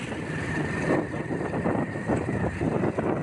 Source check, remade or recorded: recorded